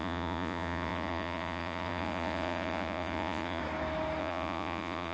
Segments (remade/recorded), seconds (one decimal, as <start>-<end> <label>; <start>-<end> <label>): 0.0-3.6 remade; 3.6-4.2 recorded; 4.2-5.1 remade